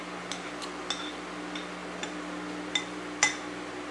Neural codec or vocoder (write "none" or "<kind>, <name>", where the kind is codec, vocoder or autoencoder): none